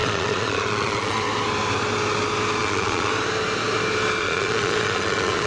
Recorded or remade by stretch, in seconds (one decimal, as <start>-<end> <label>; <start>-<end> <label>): 0.0-1.2 remade; 1.2-2.6 recorded; 2.6-3.1 remade; 3.1-4.2 recorded; 4.2-5.5 remade